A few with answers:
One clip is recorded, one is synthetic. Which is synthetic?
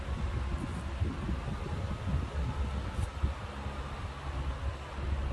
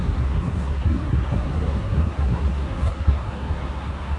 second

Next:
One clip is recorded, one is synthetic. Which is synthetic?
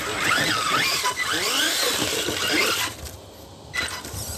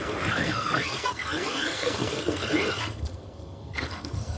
second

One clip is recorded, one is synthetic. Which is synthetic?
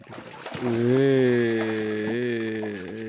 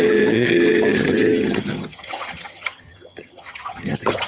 second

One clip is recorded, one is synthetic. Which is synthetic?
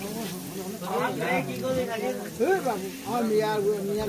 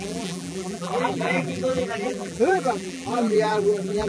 second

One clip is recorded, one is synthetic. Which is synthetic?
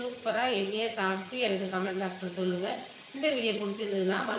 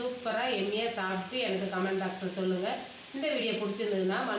first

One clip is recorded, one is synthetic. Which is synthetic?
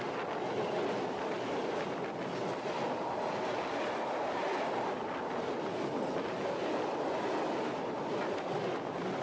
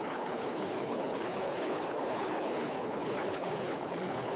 second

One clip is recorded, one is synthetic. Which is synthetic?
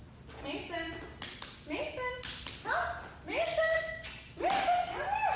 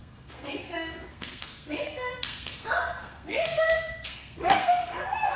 second